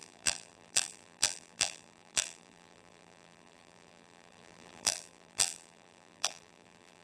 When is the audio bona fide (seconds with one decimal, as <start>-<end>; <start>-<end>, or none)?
none